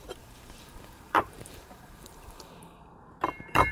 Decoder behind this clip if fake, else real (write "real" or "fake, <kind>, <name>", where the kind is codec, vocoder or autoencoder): fake, vocoder, BigVGAN v2